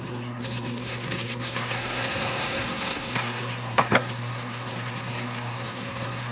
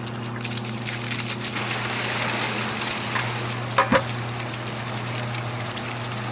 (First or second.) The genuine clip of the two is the second